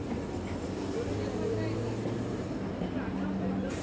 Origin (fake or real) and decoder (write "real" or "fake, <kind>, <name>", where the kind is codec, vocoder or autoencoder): real